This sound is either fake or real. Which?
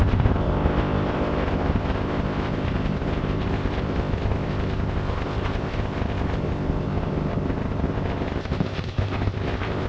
fake